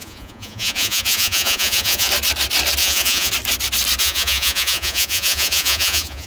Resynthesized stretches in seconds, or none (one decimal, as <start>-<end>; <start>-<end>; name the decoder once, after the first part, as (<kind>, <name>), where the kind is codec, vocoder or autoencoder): 0.0-2.1 (vocoder, Vocos); 2.8-3.3; 4.0-6.3